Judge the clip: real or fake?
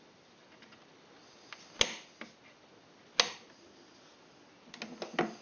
real